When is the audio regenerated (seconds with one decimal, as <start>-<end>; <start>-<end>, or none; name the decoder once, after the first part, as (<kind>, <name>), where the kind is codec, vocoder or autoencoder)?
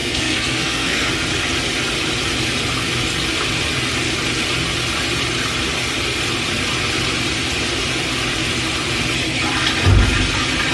0.0-1.1 (codec, SNAC)